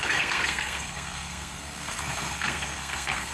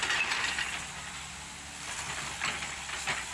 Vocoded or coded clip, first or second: first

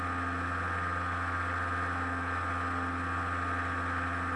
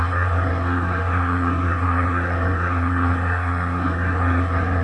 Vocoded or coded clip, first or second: second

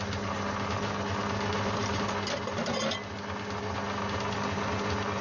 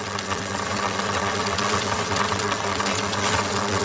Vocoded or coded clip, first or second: second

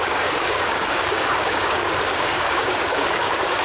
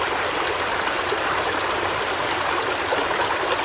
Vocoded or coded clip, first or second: first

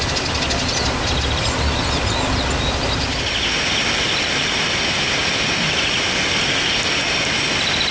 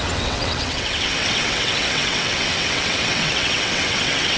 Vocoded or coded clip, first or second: second